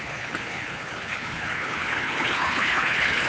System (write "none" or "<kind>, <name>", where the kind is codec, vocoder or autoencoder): codec, HILCodec